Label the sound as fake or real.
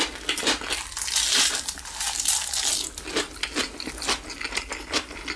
real